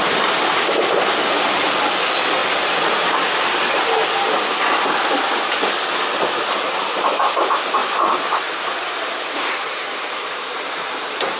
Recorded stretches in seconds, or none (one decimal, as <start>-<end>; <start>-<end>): 0.0-7.8; 11.0-11.4